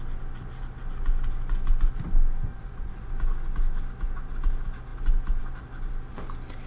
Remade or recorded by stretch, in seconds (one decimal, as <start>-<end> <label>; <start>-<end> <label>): 0.0-2.5 recorded; 2.5-3.1 remade; 3.1-6.7 recorded